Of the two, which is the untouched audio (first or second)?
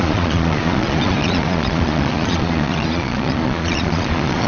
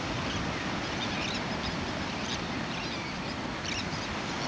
second